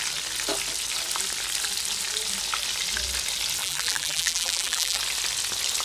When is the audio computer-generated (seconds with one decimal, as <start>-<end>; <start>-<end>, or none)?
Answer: 3.6-5.0